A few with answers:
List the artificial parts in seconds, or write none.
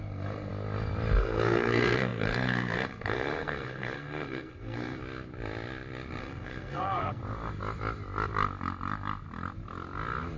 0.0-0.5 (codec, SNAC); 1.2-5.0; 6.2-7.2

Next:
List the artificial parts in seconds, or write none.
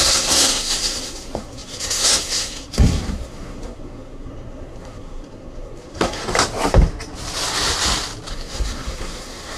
0.0-6.2 (codec, SNAC); 8.3-9.6